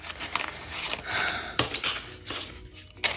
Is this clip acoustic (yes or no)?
yes